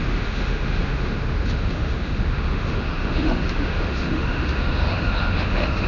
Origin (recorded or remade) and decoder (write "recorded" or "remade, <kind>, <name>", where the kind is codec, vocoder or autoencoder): remade, autoencoder, DAC-VAE